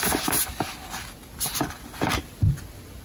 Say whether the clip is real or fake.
real